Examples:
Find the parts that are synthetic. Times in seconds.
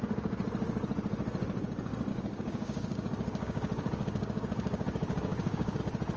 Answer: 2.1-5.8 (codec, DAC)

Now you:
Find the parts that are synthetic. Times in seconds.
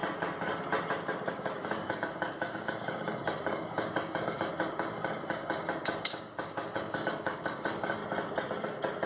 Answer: 1.3-8.0 (codec, DAC)